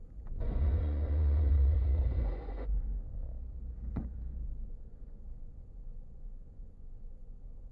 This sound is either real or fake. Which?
fake